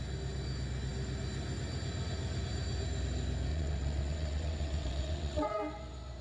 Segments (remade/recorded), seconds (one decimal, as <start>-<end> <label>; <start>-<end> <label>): 0.0-3.5 recorded; 3.5-5.6 remade; 5.6-6.2 recorded